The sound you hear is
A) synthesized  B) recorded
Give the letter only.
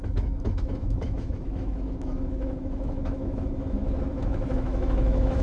A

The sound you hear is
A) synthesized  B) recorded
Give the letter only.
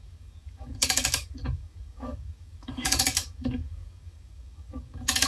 A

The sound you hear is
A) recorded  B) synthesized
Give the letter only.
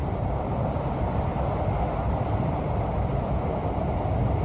A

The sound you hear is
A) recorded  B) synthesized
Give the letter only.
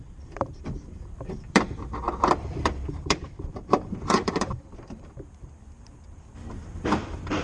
B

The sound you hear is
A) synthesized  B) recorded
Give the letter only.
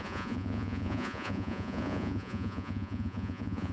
A